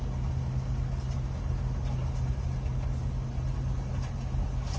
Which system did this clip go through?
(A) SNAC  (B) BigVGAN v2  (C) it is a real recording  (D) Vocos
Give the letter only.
C